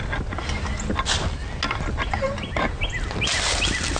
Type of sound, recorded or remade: recorded